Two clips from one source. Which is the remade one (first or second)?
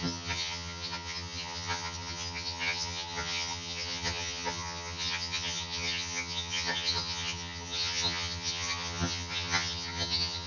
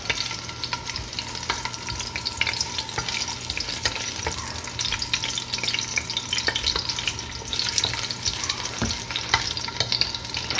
first